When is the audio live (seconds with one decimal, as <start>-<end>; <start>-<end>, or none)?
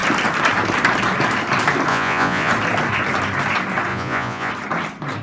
0.0-1.9; 2.5-3.9; 4.5-5.2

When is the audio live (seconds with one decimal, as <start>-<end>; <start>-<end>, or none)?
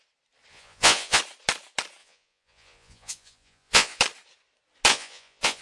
0.0-0.5; 1.2-2.0; 4.0-4.9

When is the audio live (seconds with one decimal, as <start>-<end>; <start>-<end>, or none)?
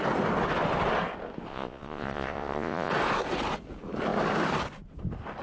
0.0-1.5; 2.9-5.4